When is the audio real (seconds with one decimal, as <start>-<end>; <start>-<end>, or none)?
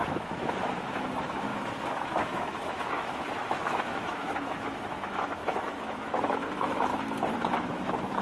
6.9-7.5